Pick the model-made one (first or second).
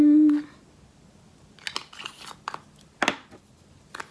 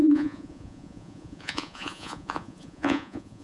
second